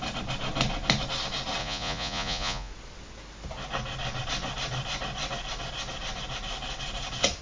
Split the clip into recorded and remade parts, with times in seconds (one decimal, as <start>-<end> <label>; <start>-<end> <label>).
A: 0.0-1.6 recorded; 1.6-2.7 remade; 2.7-7.4 recorded